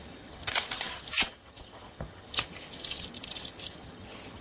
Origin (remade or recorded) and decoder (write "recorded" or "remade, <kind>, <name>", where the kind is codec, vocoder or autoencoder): remade, vocoder, HiFi-GAN